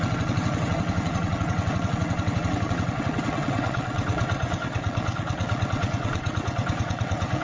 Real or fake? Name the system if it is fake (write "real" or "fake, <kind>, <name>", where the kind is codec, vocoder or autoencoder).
fake, vocoder, WaveNeXt